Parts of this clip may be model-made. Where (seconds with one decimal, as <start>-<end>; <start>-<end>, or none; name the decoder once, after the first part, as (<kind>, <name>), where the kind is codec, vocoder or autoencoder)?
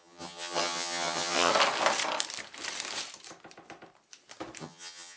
0.0-1.5 (vocoder, HiFi-GAN); 4.6-5.2